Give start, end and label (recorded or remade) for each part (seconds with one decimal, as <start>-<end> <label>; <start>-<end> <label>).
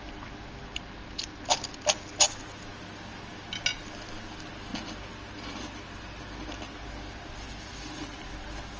0.0-8.8 recorded